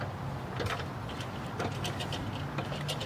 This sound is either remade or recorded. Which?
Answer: recorded